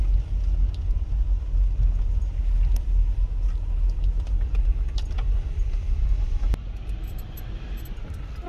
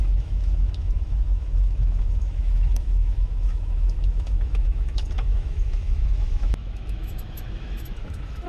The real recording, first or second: first